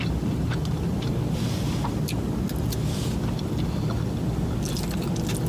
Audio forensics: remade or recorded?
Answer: recorded